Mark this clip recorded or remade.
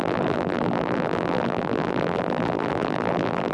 remade